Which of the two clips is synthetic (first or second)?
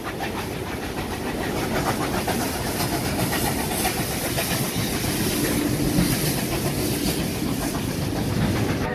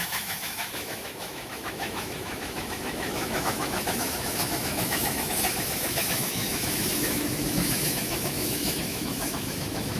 second